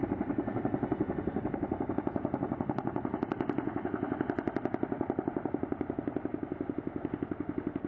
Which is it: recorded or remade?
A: recorded